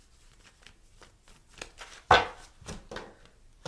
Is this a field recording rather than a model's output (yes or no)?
yes